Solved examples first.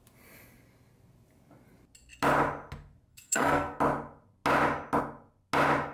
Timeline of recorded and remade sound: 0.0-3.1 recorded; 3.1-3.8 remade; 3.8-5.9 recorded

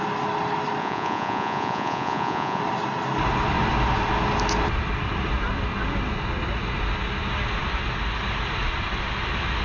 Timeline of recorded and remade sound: 0.0-0.8 recorded; 0.8-2.6 remade; 2.6-9.6 recorded

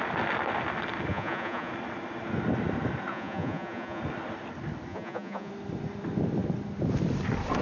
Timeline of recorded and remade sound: 0.0-1.1 recorded; 1.1-1.7 remade; 1.7-3.1 recorded; 3.1-4.0 remade; 4.0-4.9 recorded; 4.9-5.5 remade; 5.5-7.6 recorded

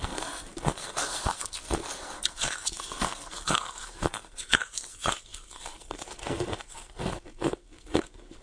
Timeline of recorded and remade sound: 0.0-8.4 remade

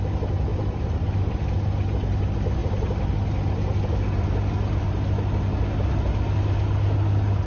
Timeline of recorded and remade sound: 0.0-0.5 recorded; 0.5-1.5 remade; 1.5-7.5 recorded

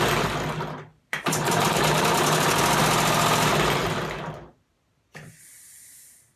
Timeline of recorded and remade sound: 0.0-0.9 recorded; 0.9-2.8 remade; 2.8-6.4 recorded

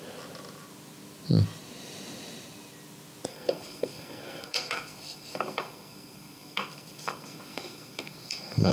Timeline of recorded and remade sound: 0.0-3.3 recorded; 3.3-8.7 remade

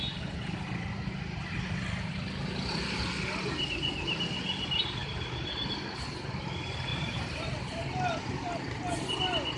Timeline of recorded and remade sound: 0.0-6.9 recorded; 6.9-7.4 remade; 7.4-9.6 recorded